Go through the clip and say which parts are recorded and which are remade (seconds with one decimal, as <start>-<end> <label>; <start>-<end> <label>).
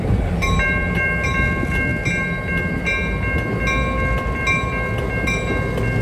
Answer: 0.0-6.0 recorded